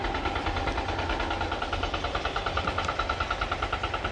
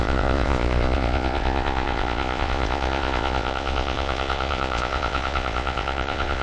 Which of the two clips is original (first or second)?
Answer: first